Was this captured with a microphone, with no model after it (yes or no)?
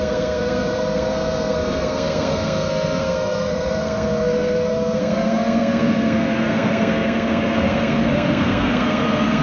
no